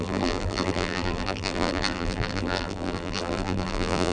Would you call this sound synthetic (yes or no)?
yes